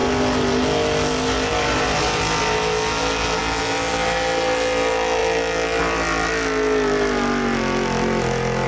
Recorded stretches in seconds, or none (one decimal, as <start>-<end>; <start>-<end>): 0.0-8.7